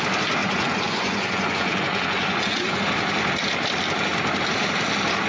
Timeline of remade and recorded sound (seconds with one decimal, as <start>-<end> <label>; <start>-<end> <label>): 0.0-0.4 recorded; 0.4-2.8 remade; 2.8-5.3 recorded